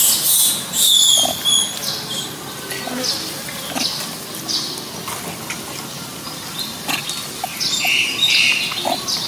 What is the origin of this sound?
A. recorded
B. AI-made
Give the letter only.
A